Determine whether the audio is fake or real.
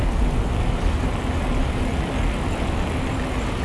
real